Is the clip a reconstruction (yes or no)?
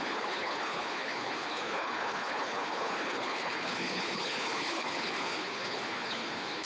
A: yes